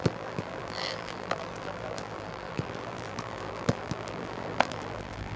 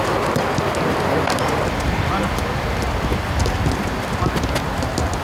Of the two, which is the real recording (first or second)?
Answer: second